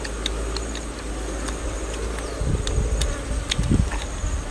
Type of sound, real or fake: real